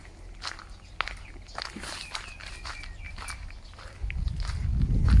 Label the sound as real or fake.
real